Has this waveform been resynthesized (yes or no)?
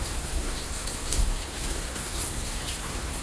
yes